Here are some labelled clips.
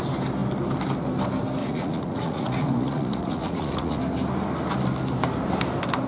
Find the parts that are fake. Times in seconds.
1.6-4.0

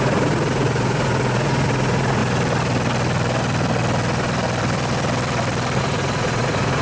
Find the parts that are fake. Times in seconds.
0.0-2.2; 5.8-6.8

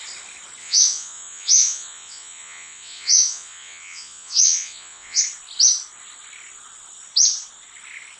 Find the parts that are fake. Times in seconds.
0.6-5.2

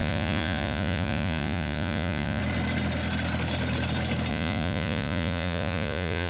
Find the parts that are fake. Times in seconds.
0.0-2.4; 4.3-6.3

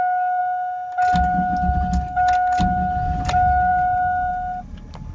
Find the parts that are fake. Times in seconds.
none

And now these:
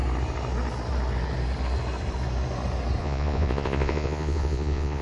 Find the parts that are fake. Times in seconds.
3.0-5.0

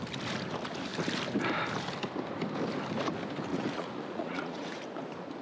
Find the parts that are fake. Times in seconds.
3.5-4.8